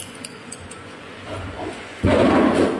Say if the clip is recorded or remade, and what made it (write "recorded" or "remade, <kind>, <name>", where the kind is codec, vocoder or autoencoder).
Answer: remade, vocoder, Vocos